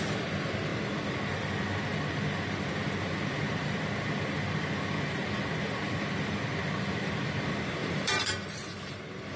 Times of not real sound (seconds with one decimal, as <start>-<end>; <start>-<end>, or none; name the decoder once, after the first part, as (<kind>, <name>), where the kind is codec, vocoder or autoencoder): 7.8-9.0 (vocoder, BigVGAN v2)